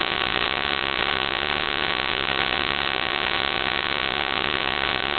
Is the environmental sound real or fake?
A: fake